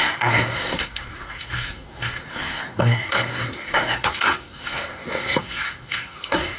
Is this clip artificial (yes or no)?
yes